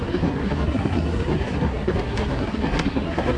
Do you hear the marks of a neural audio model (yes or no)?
yes